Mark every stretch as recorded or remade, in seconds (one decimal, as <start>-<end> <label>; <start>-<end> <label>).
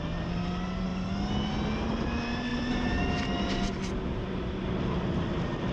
0.0-5.7 recorded